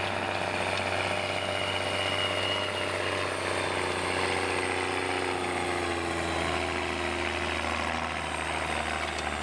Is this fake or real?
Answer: real